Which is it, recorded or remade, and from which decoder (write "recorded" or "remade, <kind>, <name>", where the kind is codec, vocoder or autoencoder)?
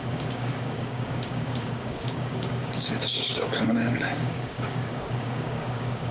remade, codec, DAC